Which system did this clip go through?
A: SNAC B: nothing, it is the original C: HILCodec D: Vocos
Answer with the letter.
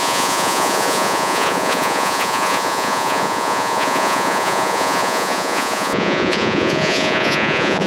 D